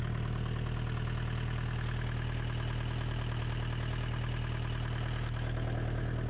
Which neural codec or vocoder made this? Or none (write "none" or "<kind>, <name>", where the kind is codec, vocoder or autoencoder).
none